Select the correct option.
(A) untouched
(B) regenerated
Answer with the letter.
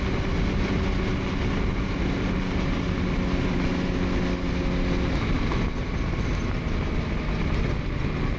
A